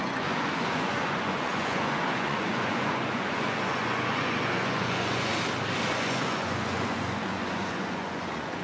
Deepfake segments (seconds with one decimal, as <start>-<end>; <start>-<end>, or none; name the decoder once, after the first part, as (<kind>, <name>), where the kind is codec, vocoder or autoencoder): 0.0-5.3 (vocoder, Vocos); 5.9-8.6

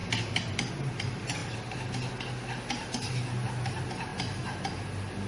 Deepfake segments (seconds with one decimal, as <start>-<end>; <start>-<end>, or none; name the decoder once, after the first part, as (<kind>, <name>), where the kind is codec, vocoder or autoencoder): none

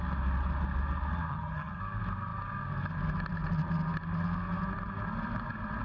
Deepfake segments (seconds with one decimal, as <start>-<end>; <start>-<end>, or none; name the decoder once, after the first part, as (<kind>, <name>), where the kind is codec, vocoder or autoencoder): 1.3-1.8 (vocoder, HiFi-GAN)

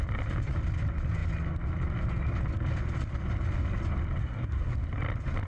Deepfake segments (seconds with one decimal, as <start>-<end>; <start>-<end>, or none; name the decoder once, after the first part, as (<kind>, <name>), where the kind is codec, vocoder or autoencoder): 4.2-4.7 (codec, SNAC)

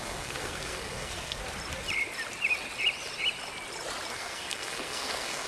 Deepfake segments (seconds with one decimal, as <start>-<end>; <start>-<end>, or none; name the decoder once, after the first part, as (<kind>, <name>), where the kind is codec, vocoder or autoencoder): 0.0-1.4 (codec, SNAC); 4.1-5.5

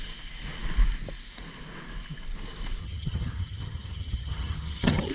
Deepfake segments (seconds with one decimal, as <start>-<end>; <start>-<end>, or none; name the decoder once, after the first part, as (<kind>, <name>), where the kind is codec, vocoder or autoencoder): 2.8-5.1 (vocoder, HiFi-GAN)